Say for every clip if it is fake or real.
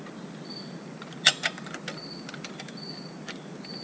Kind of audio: real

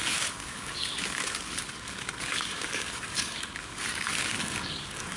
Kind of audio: fake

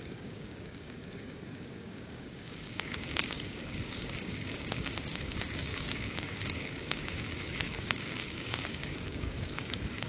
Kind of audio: fake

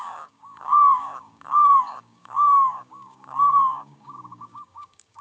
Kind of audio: fake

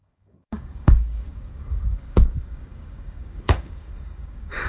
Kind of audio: fake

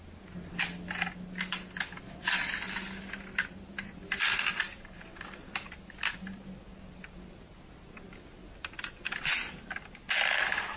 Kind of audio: real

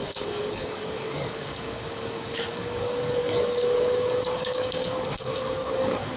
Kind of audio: fake